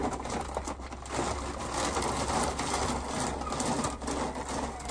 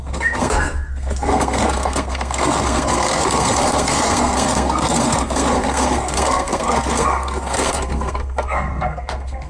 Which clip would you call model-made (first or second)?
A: second